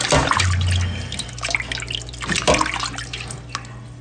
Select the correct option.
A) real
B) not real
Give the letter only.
A